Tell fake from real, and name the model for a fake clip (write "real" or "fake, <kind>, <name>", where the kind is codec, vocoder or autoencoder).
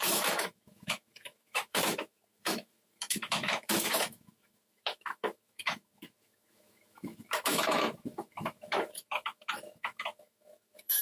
fake, autoencoder, DAC-VAE